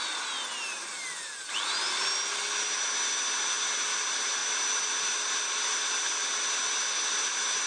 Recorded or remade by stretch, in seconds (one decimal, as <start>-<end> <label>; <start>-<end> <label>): 0.0-7.7 recorded